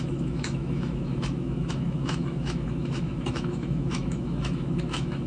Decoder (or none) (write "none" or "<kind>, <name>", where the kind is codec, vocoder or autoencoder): autoencoder, DAC-VAE